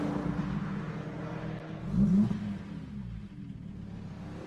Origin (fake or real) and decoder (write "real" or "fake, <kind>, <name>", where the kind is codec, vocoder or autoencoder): real